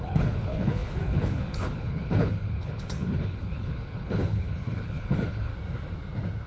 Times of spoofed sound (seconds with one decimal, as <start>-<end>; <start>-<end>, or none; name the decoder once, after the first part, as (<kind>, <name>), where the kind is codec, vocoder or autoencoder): 0.0-5.5 (codec, HILCodec)